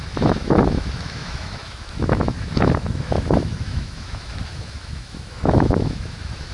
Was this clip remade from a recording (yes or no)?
yes